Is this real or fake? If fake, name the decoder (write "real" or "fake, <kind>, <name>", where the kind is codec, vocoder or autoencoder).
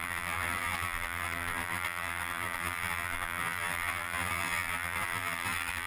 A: fake, vocoder, BigVGAN v2